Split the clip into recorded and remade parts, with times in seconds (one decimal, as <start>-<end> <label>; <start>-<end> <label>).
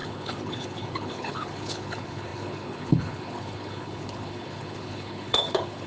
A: 0.0-5.9 remade